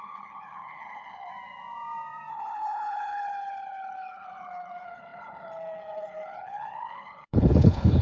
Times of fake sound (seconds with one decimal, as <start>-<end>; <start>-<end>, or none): 0.0-1.3; 2.3-8.0